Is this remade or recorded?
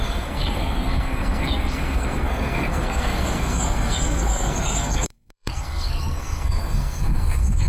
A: remade